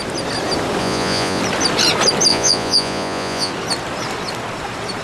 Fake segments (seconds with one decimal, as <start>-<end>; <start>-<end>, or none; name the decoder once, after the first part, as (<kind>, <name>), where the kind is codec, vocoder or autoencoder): 0.8-1.4 (vocoder, Vocos); 2.3-3.5